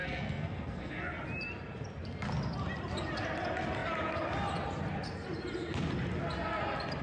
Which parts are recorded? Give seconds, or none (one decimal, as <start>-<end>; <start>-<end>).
1.1-7.0